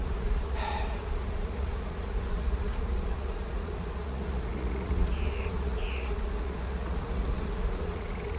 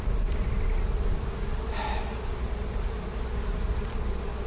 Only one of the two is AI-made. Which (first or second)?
first